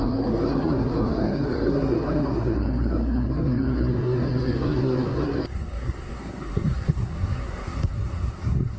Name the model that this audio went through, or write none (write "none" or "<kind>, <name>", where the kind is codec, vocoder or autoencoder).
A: codec, SNAC